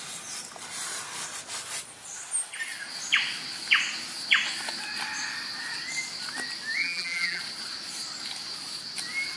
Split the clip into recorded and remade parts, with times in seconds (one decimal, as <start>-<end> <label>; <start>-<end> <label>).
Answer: 0.0-6.8 recorded; 6.8-7.4 remade; 7.4-9.4 recorded